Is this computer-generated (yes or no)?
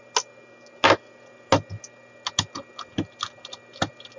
no